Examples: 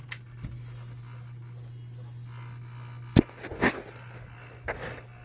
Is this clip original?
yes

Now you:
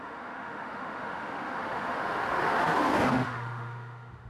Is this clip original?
no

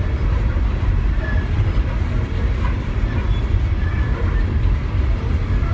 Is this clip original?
yes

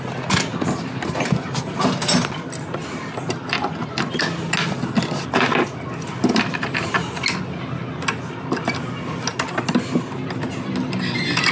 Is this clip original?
yes